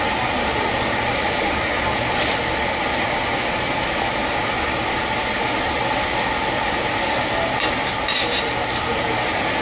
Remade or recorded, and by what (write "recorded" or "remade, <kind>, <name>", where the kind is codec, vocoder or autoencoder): recorded